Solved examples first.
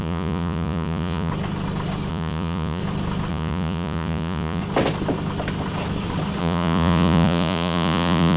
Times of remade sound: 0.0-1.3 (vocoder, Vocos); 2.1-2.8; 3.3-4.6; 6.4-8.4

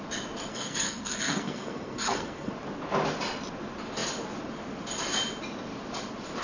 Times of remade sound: 0.5-2.5 (codec, SNAC)

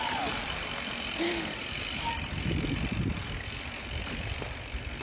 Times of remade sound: none